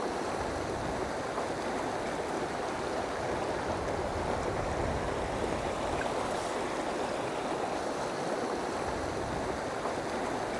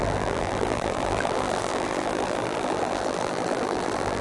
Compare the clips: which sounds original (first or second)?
first